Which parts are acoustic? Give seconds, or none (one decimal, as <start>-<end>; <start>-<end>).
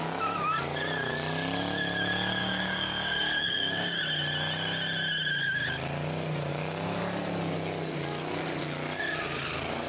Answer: 0.0-2.4; 4.0-6.5; 7.0-9.9